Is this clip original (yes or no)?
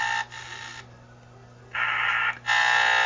yes